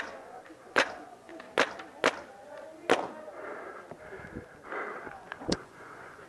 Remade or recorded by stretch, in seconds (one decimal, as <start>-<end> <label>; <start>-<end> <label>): 0.0-1.3 remade; 1.3-5.1 recorded; 5.1-6.3 remade